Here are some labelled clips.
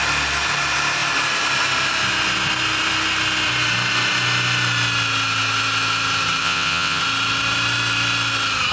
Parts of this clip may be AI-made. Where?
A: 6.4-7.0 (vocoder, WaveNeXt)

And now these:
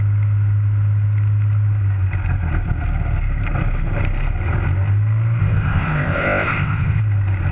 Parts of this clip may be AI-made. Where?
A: 5.4-7.0 (codec, ZipCodec)

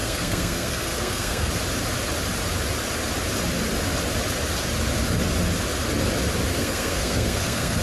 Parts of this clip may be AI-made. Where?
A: 0.0-1.5 (codec, SNAC); 6.5-7.8

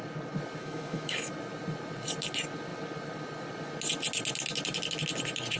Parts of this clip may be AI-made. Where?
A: 0.6-1.3 (autoencoder, DAC-VAE)

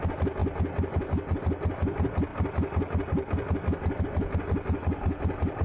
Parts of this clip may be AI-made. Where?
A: none

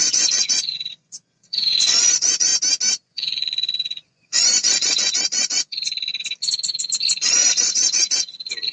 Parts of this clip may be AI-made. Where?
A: 0.0-2.5 (vocoder, Vocos); 3.0-6.1; 6.8-8.7